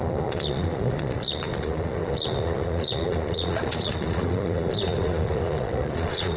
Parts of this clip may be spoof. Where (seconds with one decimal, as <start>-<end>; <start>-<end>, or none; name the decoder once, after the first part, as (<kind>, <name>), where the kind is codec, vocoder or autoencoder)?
0.0-6.4 (vocoder, Vocos)